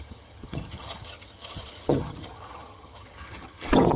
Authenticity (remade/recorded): remade